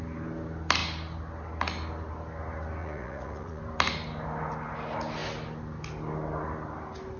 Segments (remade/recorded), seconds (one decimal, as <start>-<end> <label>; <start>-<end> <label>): 0.0-2.8 recorded; 2.8-3.6 remade; 3.6-7.2 recorded